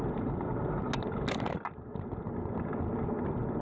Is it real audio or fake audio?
real